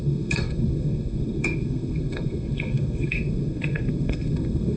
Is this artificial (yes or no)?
yes